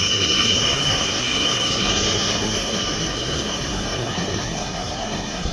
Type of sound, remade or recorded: remade